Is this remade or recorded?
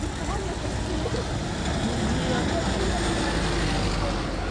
recorded